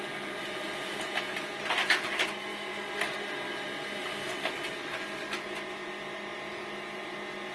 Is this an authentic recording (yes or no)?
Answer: yes